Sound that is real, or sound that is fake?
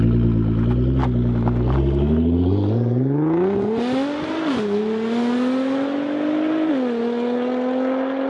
real